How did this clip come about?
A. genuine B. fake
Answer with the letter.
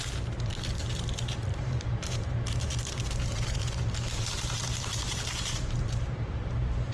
B